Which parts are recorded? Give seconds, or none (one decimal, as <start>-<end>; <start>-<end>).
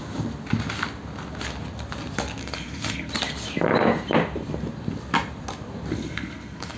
0.0-2.4; 3.1-5.9